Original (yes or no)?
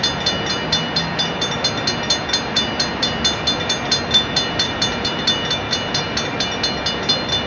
yes